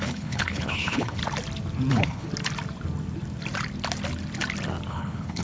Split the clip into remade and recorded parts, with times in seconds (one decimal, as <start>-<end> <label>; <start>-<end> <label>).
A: 0.0-1.2 remade; 1.2-1.9 recorded; 1.9-2.3 remade; 2.3-4.9 recorded; 4.9-5.4 remade